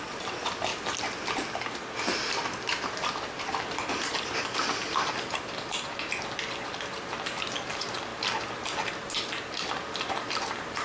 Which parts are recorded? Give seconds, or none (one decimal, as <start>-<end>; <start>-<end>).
0.0-10.8